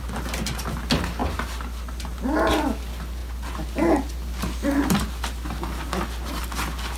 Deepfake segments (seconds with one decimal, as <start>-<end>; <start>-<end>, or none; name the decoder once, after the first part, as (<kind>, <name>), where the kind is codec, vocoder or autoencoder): none